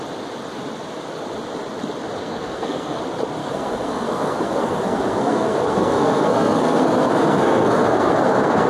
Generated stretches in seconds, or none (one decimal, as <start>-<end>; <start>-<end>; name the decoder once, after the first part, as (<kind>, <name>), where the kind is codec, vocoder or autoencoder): 2.2-3.0 (codec, SNAC); 3.4-8.7

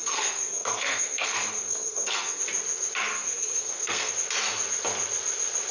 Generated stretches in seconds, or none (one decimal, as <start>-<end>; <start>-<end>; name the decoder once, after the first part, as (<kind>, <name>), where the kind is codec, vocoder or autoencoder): 0.0-2.4 (codec, SNAC); 3.1-4.1

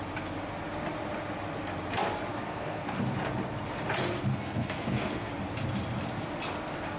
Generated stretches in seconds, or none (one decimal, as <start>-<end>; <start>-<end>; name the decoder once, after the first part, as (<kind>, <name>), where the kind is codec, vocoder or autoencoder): 2.3-3.0 (codec, SNAC); 4.3-5.3

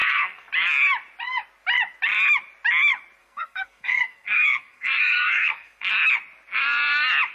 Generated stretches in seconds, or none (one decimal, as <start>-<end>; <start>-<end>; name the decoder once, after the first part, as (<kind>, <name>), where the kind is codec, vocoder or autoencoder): 0.0-0.5 (codec, SNAC); 3.2-5.9

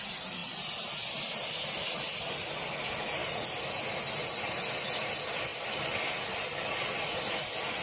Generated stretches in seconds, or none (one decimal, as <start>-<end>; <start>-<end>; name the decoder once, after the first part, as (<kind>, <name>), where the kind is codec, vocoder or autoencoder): none

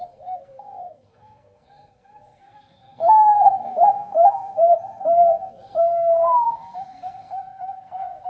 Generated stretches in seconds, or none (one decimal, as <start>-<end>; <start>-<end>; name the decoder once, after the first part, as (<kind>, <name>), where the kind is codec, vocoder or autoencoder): 0.0-8.3 (codec, SNAC)

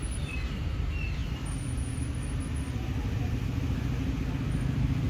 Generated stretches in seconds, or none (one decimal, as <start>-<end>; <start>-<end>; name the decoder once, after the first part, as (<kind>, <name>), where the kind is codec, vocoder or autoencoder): none

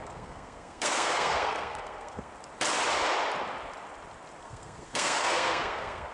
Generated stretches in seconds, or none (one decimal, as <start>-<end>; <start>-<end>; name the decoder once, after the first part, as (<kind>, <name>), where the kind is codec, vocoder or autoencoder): 0.0-2.3 (codec, SNAC); 4.4-6.1